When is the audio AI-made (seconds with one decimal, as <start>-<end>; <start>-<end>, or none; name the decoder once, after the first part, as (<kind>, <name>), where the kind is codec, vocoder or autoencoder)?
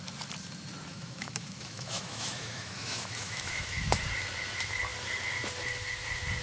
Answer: 0.9-4.0 (autoencoder, DAC-VAE)